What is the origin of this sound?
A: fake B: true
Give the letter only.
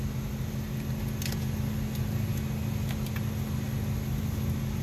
B